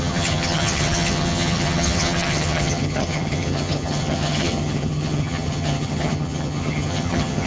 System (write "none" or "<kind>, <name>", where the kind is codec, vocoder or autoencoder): vocoder, HiFi-GAN